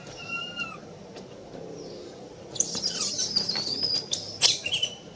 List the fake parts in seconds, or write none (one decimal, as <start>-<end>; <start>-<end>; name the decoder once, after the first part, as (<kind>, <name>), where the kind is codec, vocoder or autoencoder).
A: 0.0-3.2 (vocoder, BigVGAN v2); 3.7-5.2